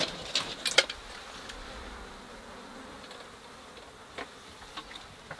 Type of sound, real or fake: real